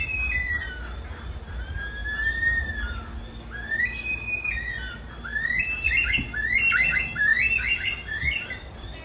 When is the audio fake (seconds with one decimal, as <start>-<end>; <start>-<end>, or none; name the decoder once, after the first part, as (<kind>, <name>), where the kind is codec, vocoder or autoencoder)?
none